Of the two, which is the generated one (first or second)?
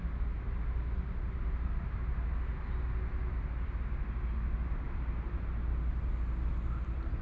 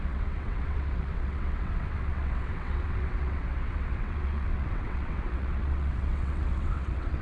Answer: second